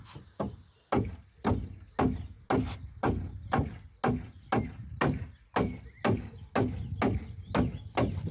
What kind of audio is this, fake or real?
real